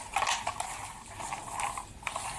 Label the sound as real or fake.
real